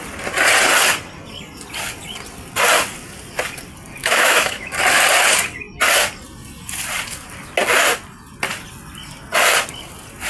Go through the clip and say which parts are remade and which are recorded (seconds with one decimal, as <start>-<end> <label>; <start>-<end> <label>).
0.0-4.0 recorded; 4.0-4.7 remade; 4.7-10.3 recorded